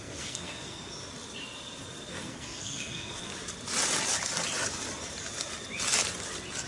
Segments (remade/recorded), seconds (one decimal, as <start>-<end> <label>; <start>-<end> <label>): 0.0-0.9 remade; 0.9-2.1 recorded; 2.1-3.3 remade; 3.3-6.7 recorded